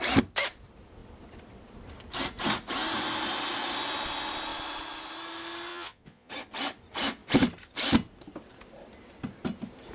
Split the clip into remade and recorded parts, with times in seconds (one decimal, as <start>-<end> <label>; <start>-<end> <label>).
0.0-5.7 recorded; 5.7-6.3 remade; 6.3-9.9 recorded